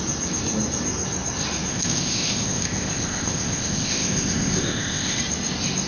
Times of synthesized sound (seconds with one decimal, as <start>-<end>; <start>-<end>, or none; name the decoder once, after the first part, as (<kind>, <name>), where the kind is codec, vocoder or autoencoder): 1.7-5.2 (codec, ZipCodec)